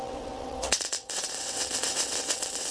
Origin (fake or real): fake